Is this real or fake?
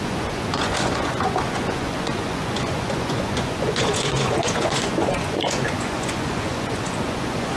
fake